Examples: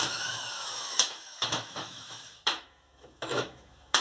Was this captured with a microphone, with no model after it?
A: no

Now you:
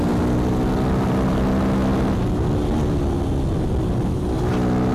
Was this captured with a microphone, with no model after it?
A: yes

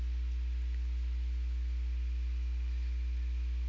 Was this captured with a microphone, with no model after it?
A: yes